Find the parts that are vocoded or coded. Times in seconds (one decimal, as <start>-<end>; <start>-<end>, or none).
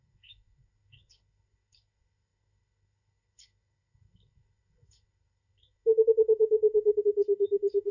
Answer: 0.0-7.9